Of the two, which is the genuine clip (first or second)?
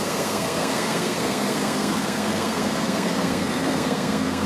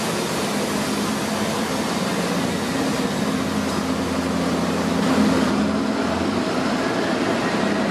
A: second